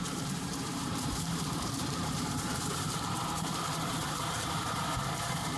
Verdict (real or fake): fake